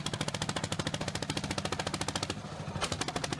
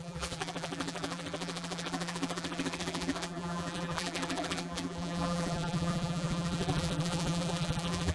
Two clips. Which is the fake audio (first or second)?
second